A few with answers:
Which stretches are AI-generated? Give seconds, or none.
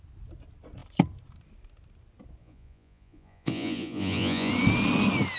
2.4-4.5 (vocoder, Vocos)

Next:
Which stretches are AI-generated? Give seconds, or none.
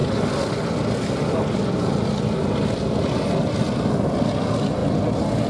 none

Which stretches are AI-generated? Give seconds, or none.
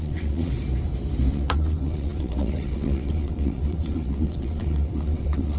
0.0-0.5 (vocoder, WaveNeXt); 1.3-5.6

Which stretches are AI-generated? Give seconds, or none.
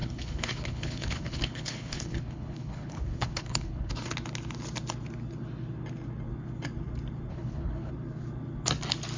0.0-3.9 (codec, HILCodec); 7.3-7.9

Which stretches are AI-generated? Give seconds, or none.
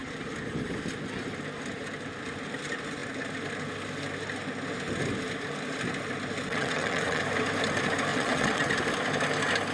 6.5-7.2 (vocoder, WaveNeXt); 8.1-8.7